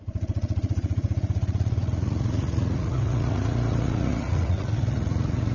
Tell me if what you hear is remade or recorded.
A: remade